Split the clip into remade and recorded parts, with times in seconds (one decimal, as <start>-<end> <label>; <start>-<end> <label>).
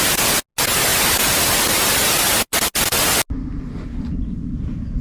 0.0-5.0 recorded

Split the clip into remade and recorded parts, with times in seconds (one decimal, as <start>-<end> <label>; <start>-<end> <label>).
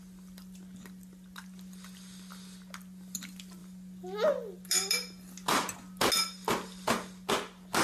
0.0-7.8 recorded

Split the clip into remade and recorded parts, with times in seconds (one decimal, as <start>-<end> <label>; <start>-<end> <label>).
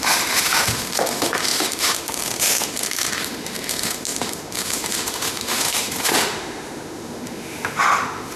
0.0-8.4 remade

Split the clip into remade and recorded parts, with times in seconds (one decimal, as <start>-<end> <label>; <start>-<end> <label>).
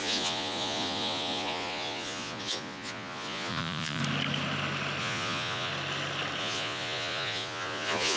0.0-4.0 remade; 4.0-5.0 recorded; 5.0-5.7 remade; 5.7-6.4 recorded; 6.4-8.2 remade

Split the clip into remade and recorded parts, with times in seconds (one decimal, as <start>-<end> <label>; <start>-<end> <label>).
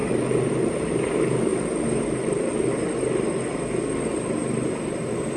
0.0-1.5 remade; 1.5-4.7 recorded; 4.7-5.4 remade